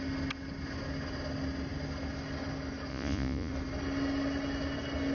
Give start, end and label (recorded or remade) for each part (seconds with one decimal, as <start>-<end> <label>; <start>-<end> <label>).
0.0-2.9 recorded; 2.9-3.5 remade; 3.5-5.1 recorded